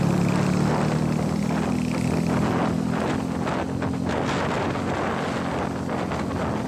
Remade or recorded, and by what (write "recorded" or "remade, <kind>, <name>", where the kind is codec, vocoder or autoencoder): recorded